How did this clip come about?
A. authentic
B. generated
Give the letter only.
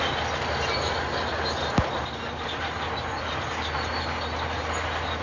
A